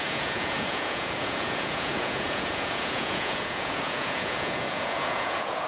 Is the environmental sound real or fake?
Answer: fake